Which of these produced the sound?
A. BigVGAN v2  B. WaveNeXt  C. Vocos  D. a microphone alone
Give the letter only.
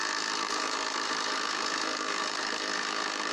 A